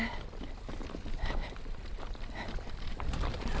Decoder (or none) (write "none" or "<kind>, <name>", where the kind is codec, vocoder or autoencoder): none